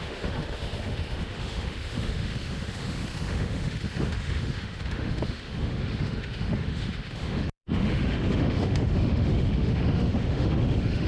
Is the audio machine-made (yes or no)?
yes